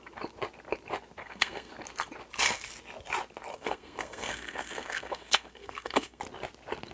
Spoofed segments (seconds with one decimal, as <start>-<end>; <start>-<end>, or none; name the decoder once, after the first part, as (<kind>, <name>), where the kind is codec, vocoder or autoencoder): 1.2-1.7 (codec, SNAC); 3.5-6.2